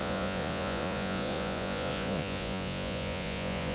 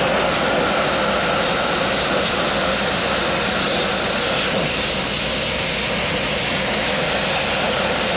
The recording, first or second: second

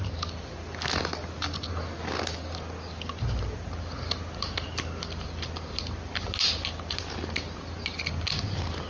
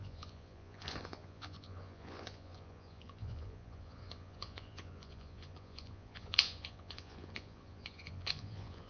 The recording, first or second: first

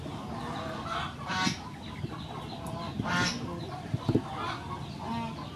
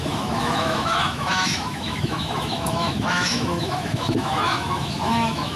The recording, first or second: first